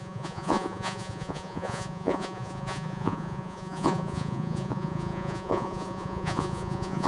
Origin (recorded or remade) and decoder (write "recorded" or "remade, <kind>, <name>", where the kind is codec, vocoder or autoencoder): remade, vocoder, Vocos